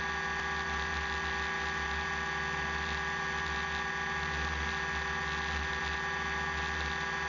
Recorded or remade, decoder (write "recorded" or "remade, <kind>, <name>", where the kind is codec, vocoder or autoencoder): recorded